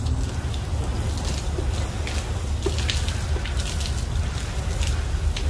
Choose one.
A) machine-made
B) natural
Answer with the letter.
B